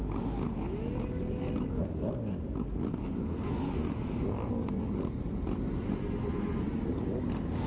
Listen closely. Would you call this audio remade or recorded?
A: recorded